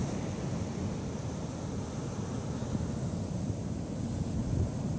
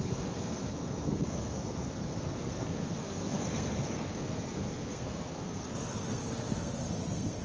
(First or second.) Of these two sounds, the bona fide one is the first